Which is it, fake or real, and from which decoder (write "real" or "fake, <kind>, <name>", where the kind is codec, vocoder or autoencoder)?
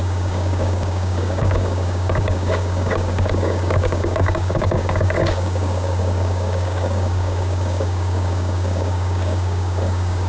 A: fake, codec, DAC